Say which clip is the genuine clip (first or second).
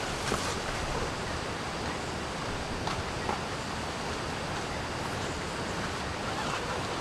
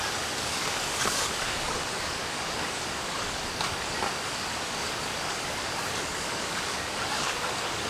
first